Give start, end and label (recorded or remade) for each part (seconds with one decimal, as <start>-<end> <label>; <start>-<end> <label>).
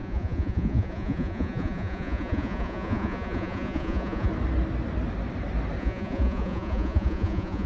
0.0-4.3 remade; 4.3-5.8 recorded; 5.8-7.7 remade